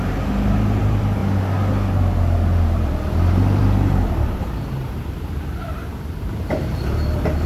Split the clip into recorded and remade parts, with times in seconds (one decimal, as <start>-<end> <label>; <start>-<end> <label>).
0.0-1.2 remade; 1.2-2.2 recorded; 2.2-7.5 remade